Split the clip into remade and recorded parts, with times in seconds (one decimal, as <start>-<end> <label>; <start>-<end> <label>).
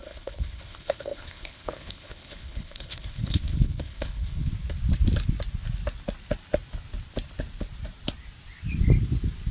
0.0-4.5 remade; 4.5-9.5 recorded